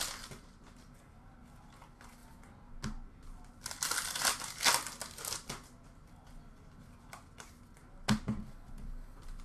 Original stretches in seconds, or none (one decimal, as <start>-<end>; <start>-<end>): 0.0-9.4